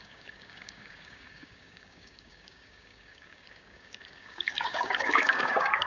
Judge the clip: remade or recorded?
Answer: remade